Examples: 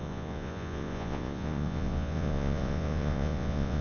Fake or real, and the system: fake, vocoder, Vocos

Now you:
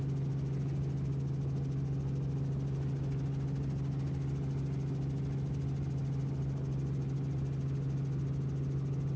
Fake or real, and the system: real